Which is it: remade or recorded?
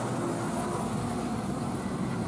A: recorded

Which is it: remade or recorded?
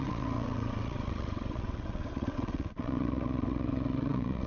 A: remade